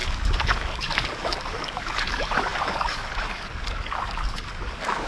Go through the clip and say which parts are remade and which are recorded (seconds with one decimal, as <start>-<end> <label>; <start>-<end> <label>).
0.0-5.1 remade